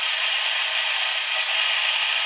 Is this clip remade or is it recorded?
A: recorded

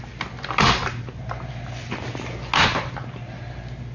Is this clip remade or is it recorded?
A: recorded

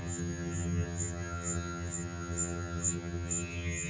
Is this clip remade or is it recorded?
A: remade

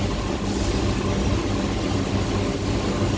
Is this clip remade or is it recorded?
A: recorded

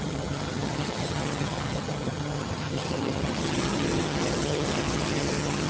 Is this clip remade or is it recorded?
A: remade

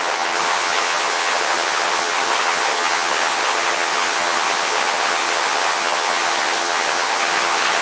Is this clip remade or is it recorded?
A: remade